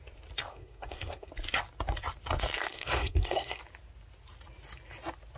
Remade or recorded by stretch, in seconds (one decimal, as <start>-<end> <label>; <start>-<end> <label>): 0.0-0.5 recorded; 0.5-1.3 remade; 1.3-2.7 recorded; 2.7-3.6 remade; 3.6-5.4 recorded